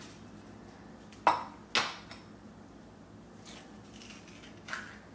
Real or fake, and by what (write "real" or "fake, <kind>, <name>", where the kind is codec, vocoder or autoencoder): real